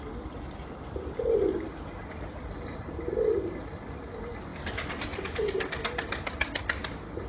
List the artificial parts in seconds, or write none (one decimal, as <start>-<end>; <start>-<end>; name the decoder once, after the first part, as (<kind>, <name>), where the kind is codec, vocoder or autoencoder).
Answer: none